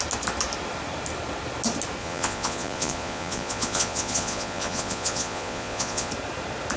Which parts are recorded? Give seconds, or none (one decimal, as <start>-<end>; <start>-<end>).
0.0-2.0; 6.1-6.8